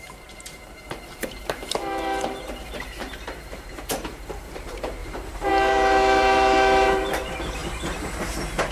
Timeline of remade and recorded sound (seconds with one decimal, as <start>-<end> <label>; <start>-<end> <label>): 0.0-8.7 remade